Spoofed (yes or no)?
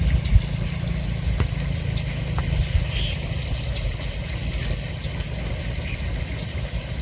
no